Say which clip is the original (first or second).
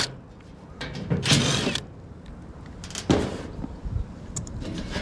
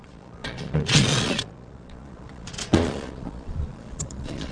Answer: first